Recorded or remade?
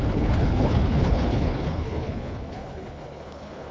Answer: remade